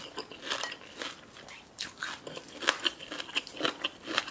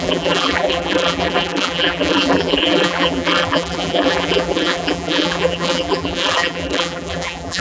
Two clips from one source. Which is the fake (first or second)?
second